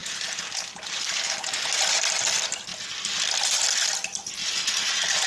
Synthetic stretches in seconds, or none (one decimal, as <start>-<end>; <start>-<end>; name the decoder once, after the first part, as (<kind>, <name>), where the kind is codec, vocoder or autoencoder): 0.0-1.6 (vocoder, BigVGAN v2); 2.7-3.2